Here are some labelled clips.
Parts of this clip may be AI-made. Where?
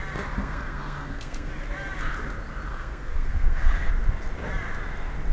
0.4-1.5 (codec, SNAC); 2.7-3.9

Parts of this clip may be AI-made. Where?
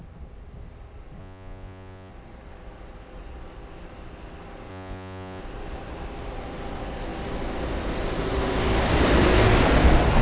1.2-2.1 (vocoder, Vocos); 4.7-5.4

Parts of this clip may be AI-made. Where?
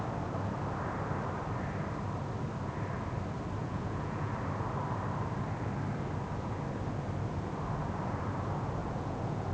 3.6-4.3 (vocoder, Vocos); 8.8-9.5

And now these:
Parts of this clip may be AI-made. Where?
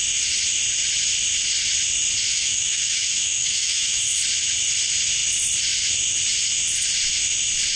2.3-4.2 (autoencoder, DAC-VAE)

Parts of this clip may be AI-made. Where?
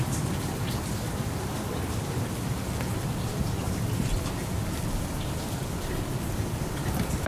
none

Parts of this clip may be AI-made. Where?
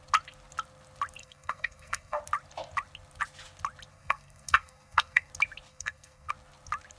1.2-2.2 (codec, SNAC); 3.9-5.3; 5.7-6.3